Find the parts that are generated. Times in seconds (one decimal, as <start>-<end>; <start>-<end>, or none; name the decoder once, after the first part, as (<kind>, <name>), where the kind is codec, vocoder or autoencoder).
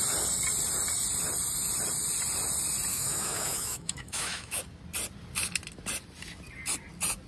2.9-4.6 (autoencoder, DAC-VAE)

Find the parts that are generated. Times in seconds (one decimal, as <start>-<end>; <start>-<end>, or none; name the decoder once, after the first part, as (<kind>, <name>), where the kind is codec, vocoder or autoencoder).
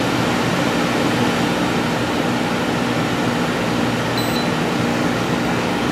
4.9-5.9 (codec, DAC)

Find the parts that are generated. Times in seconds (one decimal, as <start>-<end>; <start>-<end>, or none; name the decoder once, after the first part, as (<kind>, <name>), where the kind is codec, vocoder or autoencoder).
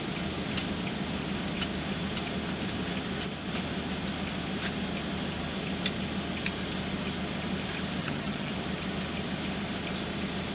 8.0-8.5 (vocoder, HiFi-GAN)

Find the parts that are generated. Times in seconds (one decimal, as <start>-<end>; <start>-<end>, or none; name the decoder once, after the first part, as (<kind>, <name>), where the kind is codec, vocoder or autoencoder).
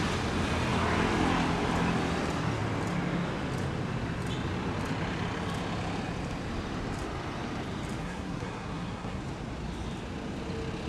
8.0-9.2 (codec, SNAC)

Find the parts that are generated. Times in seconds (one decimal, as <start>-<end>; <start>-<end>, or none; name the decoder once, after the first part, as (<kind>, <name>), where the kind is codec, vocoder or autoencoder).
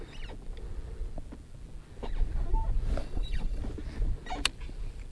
3.0-3.6 (vocoder, Vocos)